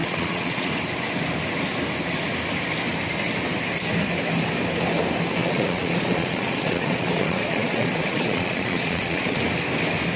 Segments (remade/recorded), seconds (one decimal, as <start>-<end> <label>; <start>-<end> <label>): 0.0-0.7 remade; 0.7-5.4 recorded; 5.4-9.4 remade; 9.4-10.2 recorded